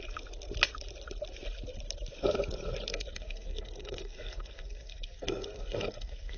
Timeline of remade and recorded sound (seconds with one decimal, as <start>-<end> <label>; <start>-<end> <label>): 0.0-2.9 recorded; 2.9-6.4 remade